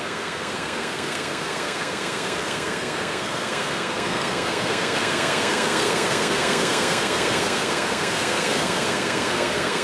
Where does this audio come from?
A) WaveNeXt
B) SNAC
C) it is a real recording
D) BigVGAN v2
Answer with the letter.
B